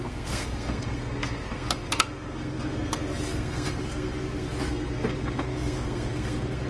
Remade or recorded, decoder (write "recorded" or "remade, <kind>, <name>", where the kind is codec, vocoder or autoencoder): remade, codec, SNAC